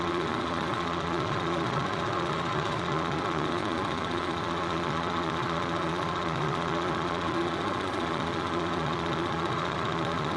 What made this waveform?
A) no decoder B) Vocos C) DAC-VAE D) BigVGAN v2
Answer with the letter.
B